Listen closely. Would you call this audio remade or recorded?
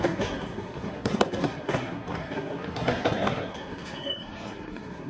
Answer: remade